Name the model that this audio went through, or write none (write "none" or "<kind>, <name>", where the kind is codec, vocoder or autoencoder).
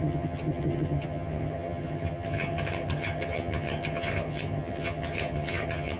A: vocoder, HiFi-GAN